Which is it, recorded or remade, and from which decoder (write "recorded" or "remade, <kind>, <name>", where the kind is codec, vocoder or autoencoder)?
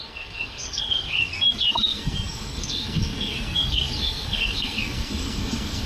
remade, codec, SNAC